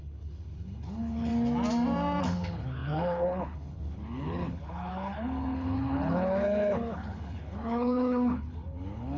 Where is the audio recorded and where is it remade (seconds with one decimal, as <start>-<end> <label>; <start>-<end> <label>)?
0.0-1.3 remade; 1.3-2.2 recorded; 2.2-9.2 remade